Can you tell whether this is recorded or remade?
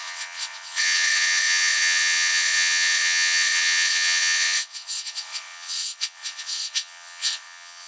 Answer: remade